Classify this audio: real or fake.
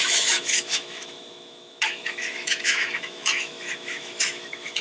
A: fake